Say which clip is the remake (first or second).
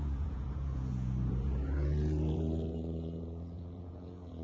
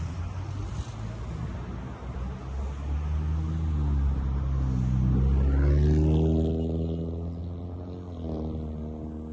first